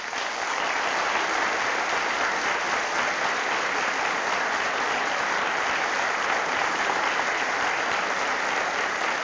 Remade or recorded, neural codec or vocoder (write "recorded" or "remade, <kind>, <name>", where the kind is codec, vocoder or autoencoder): recorded